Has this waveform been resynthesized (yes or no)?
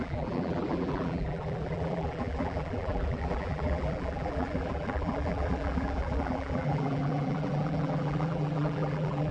yes